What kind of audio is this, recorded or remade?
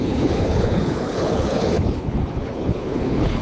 remade